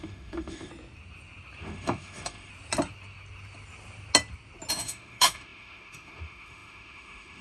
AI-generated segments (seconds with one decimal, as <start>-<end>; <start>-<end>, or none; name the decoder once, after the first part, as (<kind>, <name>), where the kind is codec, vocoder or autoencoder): 0.0-0.7 (autoencoder, DAC-VAE); 1.6-2.5; 4.7-7.4